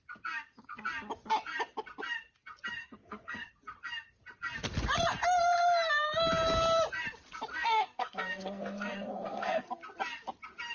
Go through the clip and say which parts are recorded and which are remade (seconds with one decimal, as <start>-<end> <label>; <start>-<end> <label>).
0.0-2.8 recorded; 2.8-3.5 remade; 3.5-7.5 recorded; 7.5-9.7 remade; 9.7-10.7 recorded